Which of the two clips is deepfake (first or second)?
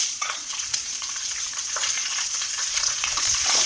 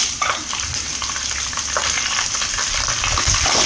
first